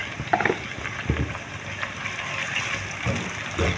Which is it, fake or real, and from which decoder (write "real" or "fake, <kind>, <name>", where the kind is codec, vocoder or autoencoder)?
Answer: real